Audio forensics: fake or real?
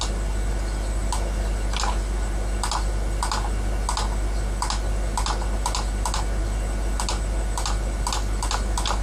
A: real